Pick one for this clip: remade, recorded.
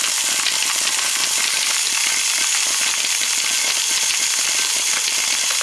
recorded